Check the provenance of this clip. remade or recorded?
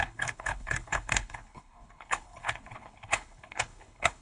remade